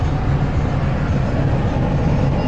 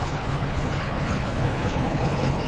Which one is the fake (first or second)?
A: second